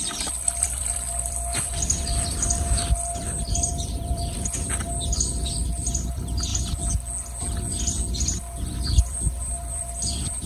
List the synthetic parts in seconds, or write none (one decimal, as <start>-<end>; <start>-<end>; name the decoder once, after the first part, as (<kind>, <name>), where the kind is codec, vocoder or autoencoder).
0.0-6.5 (vocoder, BigVGAN v2); 8.6-10.5